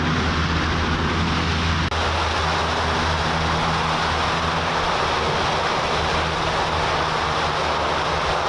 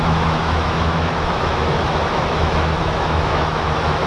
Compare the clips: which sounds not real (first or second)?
second